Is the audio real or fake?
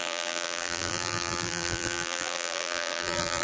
fake